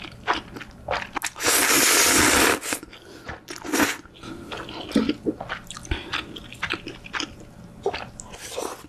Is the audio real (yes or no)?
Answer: yes